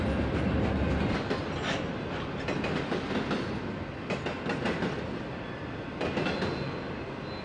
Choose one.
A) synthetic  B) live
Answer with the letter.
B